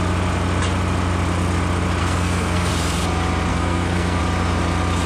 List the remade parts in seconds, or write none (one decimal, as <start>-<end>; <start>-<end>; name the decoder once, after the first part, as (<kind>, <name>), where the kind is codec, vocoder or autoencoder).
2.0-2.7 (codec, SNAC); 3.5-4.2